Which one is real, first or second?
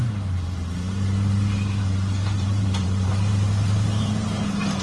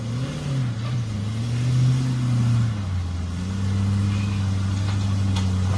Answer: second